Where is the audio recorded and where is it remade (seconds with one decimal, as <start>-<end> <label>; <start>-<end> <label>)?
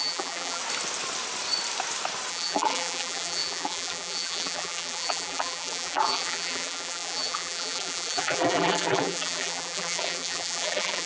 0.0-0.6 remade; 0.6-2.3 recorded; 2.3-11.1 remade